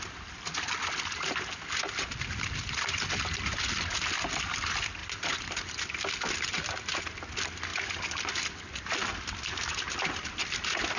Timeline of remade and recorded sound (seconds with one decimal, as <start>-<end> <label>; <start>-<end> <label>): 0.0-11.0 recorded